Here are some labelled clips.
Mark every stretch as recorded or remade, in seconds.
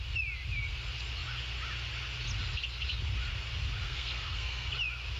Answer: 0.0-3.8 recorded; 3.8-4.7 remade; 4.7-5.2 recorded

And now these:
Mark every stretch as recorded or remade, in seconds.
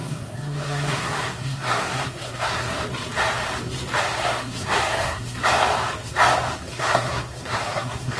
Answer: 0.0-2.8 remade; 2.8-4.0 recorded; 4.0-5.4 remade; 5.4-6.5 recorded; 6.5-8.2 remade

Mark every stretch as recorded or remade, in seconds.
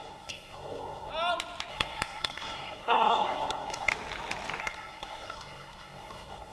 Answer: 0.0-1.1 remade; 1.1-1.7 recorded; 1.7-3.9 remade; 3.9-4.6 recorded; 4.6-6.5 remade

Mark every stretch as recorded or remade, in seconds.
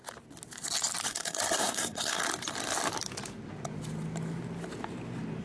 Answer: 0.0-1.1 recorded; 1.1-2.2 remade; 2.2-5.4 recorded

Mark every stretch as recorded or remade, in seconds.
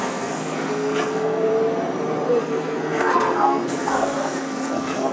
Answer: 0.0-1.5 remade; 1.5-2.4 recorded; 2.4-5.1 remade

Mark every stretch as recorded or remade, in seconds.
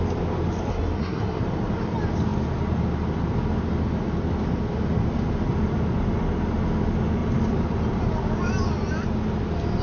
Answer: 0.0-0.7 recorded; 0.7-1.4 remade; 1.4-9.8 recorded